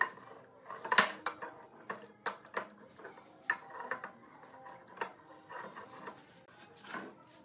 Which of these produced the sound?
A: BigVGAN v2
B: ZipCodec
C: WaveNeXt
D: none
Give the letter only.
D